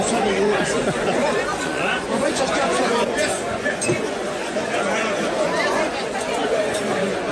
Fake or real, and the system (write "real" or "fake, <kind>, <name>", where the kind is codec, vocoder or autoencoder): fake, vocoder, Vocos